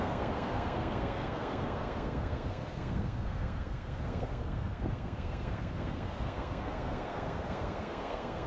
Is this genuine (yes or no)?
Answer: no